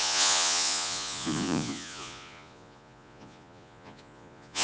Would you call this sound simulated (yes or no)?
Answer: yes